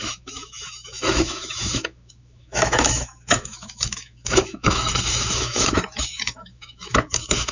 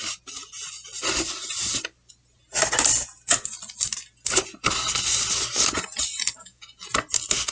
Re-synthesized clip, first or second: first